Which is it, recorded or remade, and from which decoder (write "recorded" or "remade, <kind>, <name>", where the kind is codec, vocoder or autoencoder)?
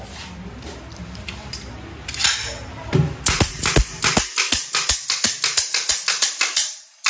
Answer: recorded